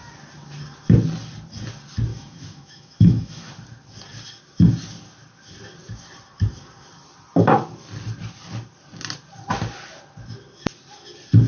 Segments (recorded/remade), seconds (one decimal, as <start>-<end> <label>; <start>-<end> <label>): 0.0-2.1 recorded; 2.1-3.5 remade; 3.5-11.5 recorded